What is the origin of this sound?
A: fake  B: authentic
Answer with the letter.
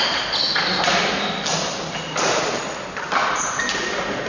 B